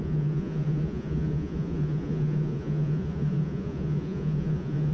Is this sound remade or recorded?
remade